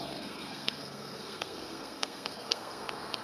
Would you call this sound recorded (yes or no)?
no